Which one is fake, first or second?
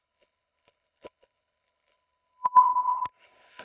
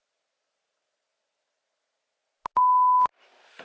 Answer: first